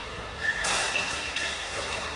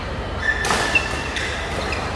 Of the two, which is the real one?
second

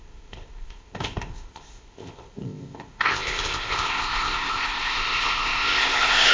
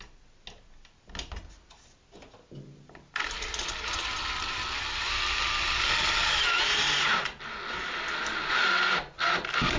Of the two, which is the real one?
second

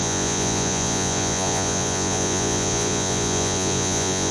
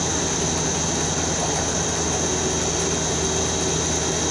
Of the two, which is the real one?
second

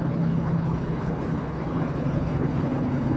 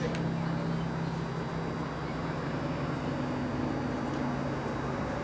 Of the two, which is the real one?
second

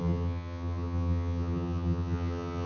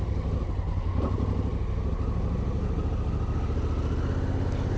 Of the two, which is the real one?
second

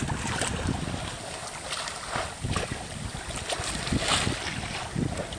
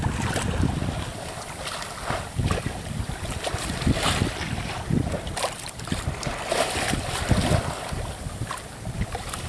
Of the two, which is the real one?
first